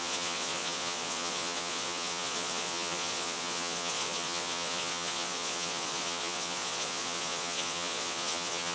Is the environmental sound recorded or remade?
remade